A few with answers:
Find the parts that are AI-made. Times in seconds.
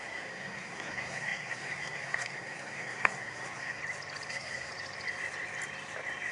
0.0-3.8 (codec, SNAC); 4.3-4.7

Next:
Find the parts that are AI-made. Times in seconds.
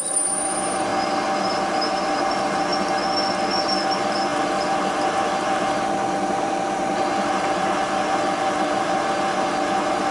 0.0-0.9 (vocoder, BigVGAN v2); 1.5-2.7; 3.6-10.1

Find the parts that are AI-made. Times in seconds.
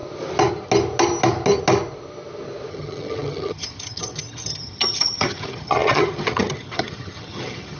2.7-7.8 (vocoder, HiFi-GAN)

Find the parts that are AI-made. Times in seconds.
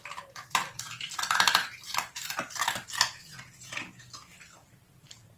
3.2-4.0 (vocoder, Vocos)